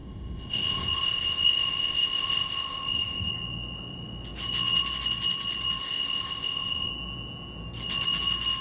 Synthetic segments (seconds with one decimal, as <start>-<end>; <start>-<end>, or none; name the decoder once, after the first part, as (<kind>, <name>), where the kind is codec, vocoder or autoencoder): 0.0-3.3 (codec, ZipCodec); 5.8-6.9